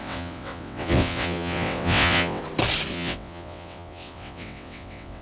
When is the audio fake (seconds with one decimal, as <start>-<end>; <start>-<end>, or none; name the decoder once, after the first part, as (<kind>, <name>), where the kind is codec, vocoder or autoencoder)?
0.0-2.4 (vocoder, WaveNeXt); 2.9-5.2